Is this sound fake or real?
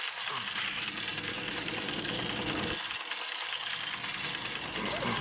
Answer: real